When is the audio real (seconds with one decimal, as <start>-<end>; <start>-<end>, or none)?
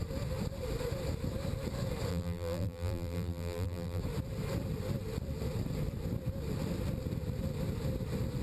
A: 0.0-2.1; 4.0-8.4